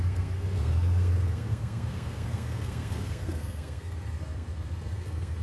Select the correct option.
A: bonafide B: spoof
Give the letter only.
B